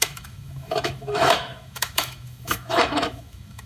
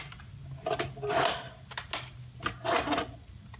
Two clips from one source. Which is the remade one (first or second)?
first